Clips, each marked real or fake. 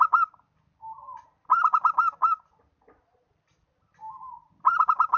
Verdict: real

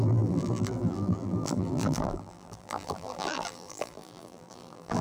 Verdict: fake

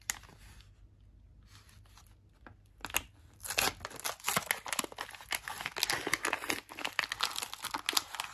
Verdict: real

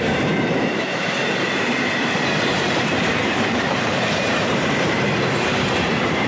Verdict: fake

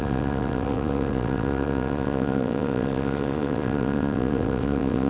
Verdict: fake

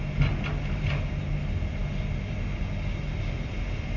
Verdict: real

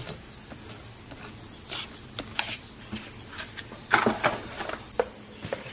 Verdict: real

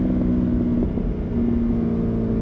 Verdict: real